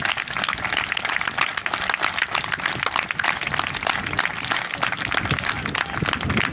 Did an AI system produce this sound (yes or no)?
no